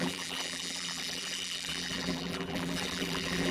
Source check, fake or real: fake